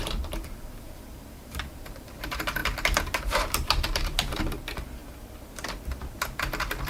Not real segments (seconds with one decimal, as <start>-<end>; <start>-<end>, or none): 0.0-6.9

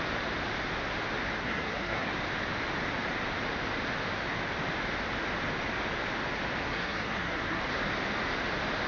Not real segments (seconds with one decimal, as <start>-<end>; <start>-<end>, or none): 1.4-2.1; 6.6-7.6

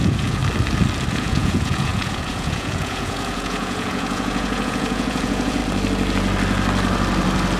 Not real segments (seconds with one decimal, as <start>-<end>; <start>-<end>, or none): 0.0-0.4; 1.1-5.6

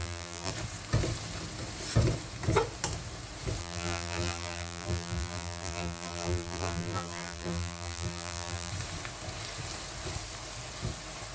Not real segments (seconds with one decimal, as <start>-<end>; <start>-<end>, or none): 0.0-0.5; 3.6-8.7

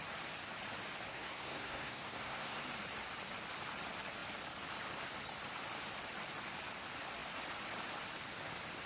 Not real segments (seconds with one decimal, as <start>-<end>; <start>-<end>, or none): 1.1-2.6

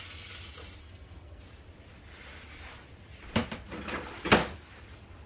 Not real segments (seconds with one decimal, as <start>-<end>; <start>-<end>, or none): 0.8-1.4